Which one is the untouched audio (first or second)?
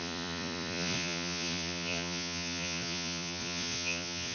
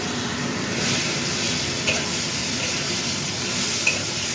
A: second